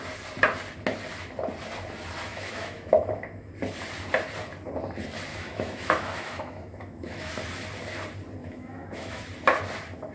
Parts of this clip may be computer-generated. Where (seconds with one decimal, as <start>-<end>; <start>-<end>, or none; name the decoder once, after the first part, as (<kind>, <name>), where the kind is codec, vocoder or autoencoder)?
2.3-3.5 (autoencoder, DAC-VAE); 5.3-7.3; 8.4-9.2